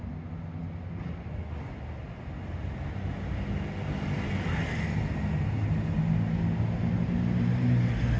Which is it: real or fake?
real